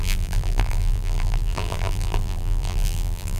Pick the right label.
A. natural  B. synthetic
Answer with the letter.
B